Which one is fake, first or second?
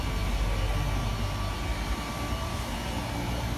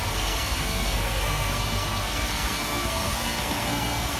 second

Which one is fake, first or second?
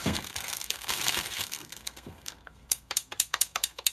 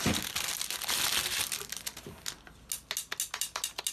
first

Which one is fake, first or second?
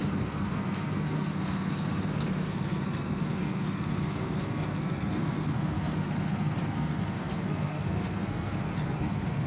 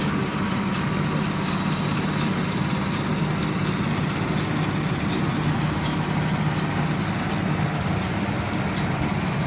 first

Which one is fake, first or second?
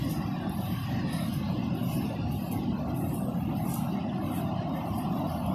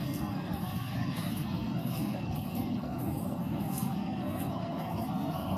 second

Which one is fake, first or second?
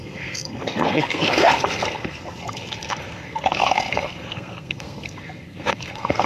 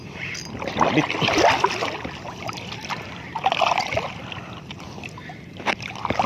first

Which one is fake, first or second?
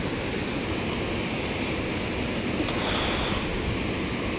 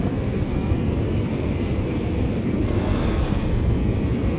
second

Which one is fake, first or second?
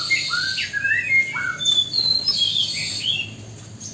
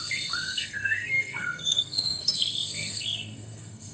second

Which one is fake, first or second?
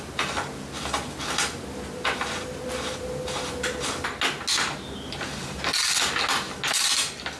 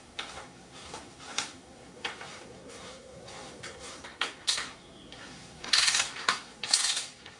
second